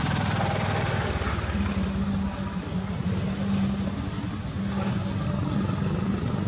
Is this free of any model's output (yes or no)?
yes